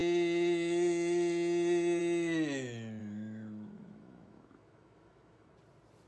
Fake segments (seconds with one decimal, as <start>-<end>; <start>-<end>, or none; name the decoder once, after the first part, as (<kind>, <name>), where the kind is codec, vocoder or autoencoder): 3.0-5.5 (autoencoder, DAC-VAE)